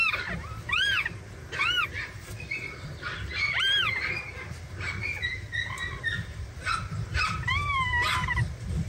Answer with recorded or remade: recorded